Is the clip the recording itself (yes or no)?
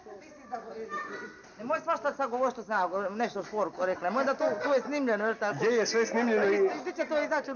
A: yes